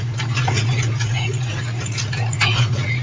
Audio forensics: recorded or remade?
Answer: remade